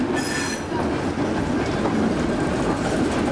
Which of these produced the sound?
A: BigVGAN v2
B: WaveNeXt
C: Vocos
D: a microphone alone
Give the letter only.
D